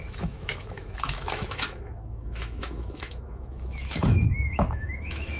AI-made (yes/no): yes